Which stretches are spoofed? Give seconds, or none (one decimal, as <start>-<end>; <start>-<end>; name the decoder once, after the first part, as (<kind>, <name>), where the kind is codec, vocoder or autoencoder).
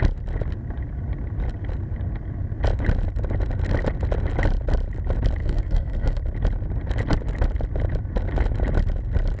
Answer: 5.4-6.2 (codec, SNAC)